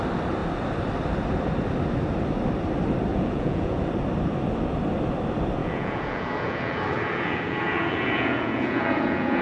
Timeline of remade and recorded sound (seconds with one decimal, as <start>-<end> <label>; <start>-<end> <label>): 0.0-3.1 recorded; 3.1-3.9 remade; 3.9-5.6 recorded; 5.6-9.4 remade